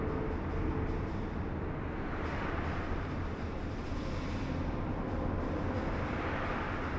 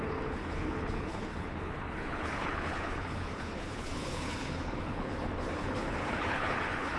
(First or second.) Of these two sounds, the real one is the first